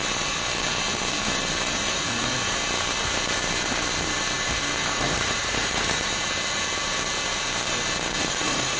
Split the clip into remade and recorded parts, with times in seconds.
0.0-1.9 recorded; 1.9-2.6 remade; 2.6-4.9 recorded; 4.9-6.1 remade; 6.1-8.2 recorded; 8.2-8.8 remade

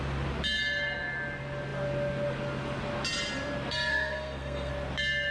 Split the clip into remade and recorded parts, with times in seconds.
0.0-3.9 recorded; 3.9-4.7 remade; 4.7-5.3 recorded